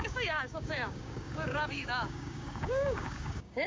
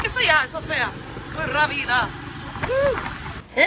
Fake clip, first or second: first